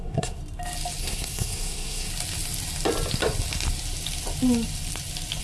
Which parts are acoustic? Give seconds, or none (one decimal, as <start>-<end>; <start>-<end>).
0.4-1.0; 2.1-5.4